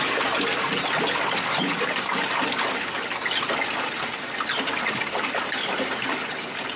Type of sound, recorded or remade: recorded